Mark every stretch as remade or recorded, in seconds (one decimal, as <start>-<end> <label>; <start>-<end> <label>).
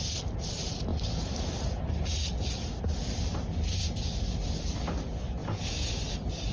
0.0-5.4 recorded; 5.4-5.9 remade; 5.9-6.5 recorded